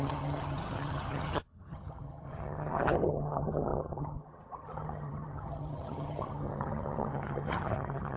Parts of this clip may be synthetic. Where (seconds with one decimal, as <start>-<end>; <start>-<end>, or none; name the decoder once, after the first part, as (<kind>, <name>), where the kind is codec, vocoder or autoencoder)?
0.0-8.2 (vocoder, HiFi-GAN)